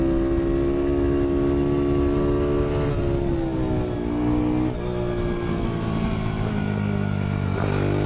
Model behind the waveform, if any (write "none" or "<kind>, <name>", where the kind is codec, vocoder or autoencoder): none